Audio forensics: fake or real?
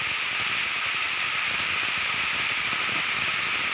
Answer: real